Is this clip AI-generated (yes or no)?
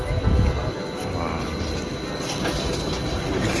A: no